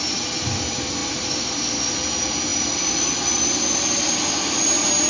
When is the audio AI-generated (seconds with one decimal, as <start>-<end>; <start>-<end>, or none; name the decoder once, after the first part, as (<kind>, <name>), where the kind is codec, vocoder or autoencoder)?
1.0-1.5 (vocoder, BigVGAN v2)